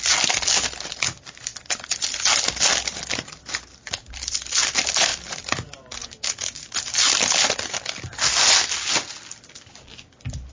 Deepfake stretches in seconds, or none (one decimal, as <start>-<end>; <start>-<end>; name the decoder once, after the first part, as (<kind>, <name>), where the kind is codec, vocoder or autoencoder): none